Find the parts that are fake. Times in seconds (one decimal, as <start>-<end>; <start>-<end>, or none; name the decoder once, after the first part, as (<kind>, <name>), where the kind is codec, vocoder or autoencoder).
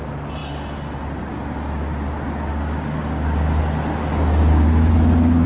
2.5-3.6 (codec, DAC); 4.1-4.9